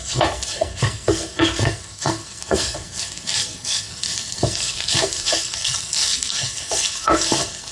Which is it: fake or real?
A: fake